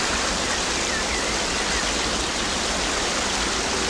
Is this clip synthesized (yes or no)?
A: no